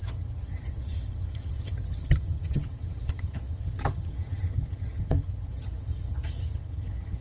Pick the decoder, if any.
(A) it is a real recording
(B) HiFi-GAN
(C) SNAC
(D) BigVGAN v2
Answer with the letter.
B